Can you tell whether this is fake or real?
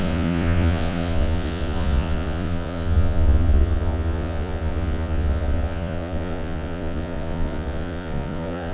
fake